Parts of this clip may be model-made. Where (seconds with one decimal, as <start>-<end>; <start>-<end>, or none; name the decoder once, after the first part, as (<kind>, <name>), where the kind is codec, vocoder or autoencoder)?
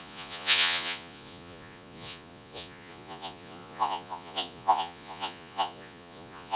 0.0-6.6 (vocoder, Vocos)